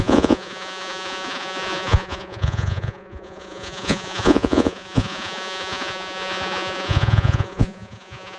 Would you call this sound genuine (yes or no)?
no